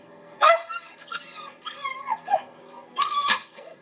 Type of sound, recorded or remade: remade